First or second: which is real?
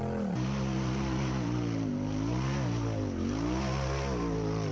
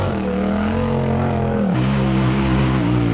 first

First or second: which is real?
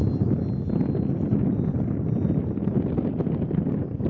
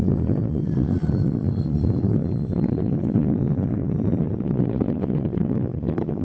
first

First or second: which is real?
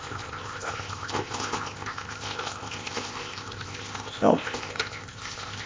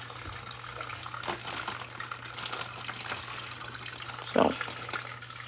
second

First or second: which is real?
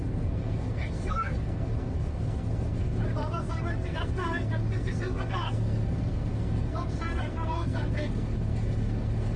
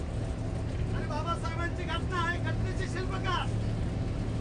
second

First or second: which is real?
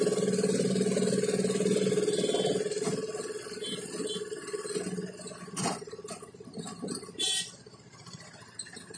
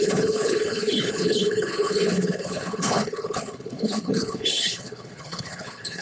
first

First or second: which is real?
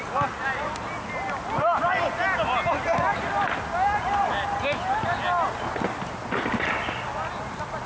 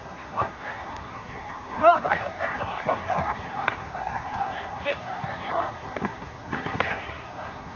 first